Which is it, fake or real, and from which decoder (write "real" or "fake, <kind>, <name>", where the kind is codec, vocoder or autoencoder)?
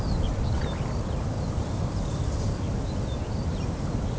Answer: real